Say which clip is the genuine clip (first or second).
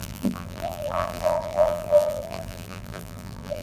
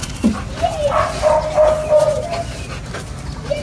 second